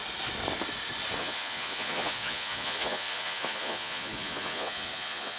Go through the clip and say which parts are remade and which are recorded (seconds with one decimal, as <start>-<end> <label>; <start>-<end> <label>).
0.0-1.2 recorded; 1.2-5.4 remade